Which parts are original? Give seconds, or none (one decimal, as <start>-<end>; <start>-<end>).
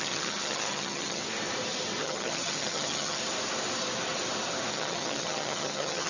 1.2-2.0; 3.2-4.7